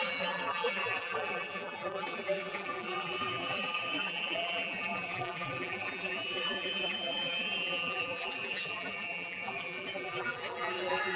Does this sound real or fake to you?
fake